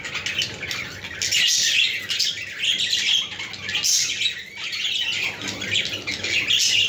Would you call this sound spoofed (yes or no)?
no